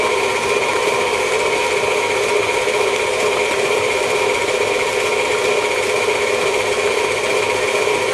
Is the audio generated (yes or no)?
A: no